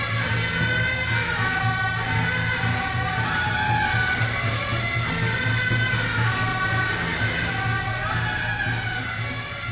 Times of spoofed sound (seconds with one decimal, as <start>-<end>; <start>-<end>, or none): 2.7-3.5; 4.1-4.8; 6.5-7.5